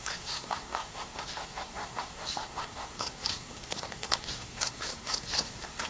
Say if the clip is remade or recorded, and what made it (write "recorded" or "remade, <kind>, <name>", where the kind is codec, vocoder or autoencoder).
remade, codec, SNAC